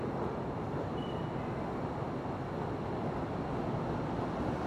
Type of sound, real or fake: real